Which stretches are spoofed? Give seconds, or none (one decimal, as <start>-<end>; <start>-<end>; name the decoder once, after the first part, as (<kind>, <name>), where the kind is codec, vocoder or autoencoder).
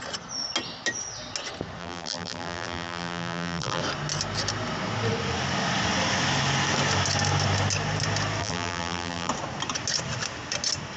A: 1.8-3.8 (vocoder, BigVGAN v2); 8.4-9.3